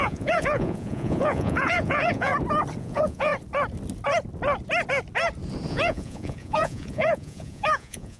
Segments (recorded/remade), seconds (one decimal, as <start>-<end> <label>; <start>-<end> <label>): 0.0-2.3 remade; 2.3-2.8 recorded; 2.8-3.3 remade; 3.3-5.7 recorded; 5.7-8.2 remade